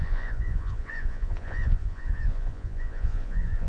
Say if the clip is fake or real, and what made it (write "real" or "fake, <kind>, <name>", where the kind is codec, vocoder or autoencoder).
fake, vocoder, Vocos